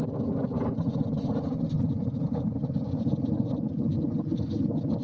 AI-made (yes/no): no